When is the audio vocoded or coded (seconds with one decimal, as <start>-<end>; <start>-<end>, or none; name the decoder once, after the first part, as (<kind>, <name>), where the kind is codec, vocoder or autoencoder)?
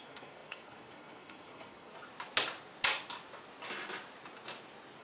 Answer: 0.0-1.9 (codec, SNAC)